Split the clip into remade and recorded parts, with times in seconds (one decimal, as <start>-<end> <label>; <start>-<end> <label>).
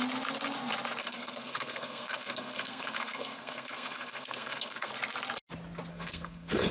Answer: 0.0-1.0 recorded; 1.0-4.9 remade; 4.9-5.9 recorded; 5.9-6.7 remade